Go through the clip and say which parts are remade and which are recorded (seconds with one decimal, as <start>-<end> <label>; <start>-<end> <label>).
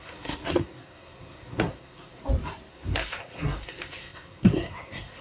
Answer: 0.0-2.2 remade; 2.2-2.7 recorded; 2.7-5.2 remade